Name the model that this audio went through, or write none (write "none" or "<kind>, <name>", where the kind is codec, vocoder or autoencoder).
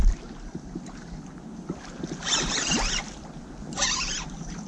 none